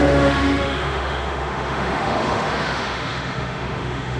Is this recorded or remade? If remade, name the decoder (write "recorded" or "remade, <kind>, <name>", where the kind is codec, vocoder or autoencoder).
remade, autoencoder, DAC-VAE